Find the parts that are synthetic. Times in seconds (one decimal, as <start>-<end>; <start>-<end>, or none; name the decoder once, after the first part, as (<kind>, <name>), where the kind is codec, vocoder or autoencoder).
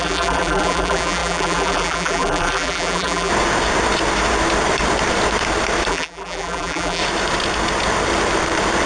0.0-3.3 (vocoder, BigVGAN v2); 5.9-7.0